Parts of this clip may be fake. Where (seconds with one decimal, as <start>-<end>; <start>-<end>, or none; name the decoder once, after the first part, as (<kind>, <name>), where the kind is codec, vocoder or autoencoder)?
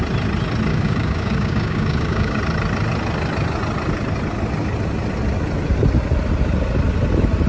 0.7-2.4 (codec, DAC)